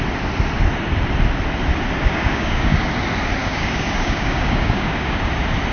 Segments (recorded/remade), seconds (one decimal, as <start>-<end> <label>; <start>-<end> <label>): 0.0-2.0 recorded; 2.0-2.9 remade; 2.9-3.4 recorded; 3.4-5.3 remade; 5.3-5.7 recorded